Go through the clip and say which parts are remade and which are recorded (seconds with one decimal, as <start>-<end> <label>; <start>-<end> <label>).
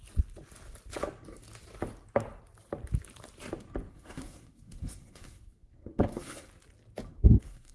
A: 0.0-3.9 recorded; 3.9-6.5 remade; 6.5-7.1 recorded; 7.1-7.7 remade